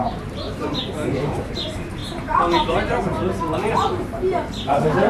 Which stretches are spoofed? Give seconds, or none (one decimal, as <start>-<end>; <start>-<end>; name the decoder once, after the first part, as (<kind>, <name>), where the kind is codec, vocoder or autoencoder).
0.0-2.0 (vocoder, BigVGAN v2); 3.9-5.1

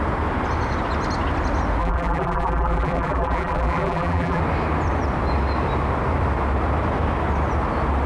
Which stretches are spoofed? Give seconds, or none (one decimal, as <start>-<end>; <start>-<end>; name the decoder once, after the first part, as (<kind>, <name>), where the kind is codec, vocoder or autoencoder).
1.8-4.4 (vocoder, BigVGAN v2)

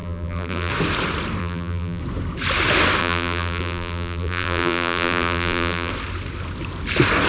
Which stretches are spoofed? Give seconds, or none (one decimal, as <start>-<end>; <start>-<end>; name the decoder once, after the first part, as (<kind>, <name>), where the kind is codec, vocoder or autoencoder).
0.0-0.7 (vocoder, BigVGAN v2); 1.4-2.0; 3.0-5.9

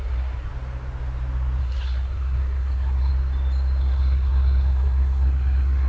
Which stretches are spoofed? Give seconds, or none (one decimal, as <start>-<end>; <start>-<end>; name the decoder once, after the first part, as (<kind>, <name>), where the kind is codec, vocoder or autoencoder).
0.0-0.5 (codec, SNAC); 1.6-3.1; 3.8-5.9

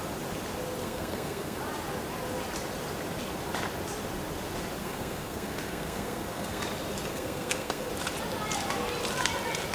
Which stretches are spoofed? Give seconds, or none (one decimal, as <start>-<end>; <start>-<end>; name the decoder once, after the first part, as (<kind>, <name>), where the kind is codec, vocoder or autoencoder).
0.8-1.6 (codec, SNAC); 4.8-6.6; 7.1-7.9

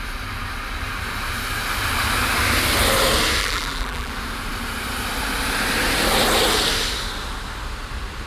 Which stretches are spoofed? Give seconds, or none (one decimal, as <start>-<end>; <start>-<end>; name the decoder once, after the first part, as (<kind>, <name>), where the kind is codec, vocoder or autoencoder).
3.4-4.1 (vocoder, BigVGAN v2)